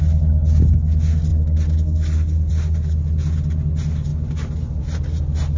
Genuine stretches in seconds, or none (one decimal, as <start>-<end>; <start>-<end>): 0.0-5.6